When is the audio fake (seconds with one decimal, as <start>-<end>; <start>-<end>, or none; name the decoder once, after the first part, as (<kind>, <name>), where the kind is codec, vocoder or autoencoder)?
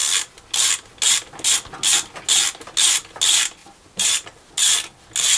3.6-4.5 (vocoder, BigVGAN v2)